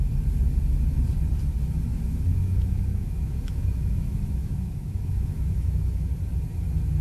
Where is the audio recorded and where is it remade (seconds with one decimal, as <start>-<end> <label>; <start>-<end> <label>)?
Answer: 0.0-1.9 recorded; 1.9-6.1 remade; 6.1-7.0 recorded